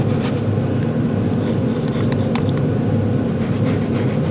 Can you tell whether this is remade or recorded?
recorded